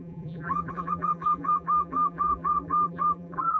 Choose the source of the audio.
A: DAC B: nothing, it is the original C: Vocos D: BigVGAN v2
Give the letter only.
D